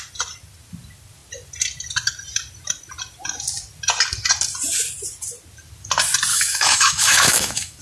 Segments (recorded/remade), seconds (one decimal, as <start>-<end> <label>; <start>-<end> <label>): 0.0-6.3 recorded; 6.3-7.8 remade